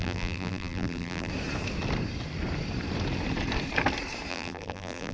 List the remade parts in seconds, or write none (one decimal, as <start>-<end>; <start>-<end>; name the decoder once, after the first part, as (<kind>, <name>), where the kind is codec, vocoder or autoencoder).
0.0-1.3 (vocoder, BigVGAN v2); 4.3-5.1